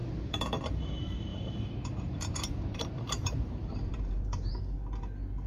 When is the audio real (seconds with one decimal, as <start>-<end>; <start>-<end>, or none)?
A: 0.9-1.3; 4.6-5.5